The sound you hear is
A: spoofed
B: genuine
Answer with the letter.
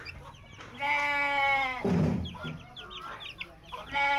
B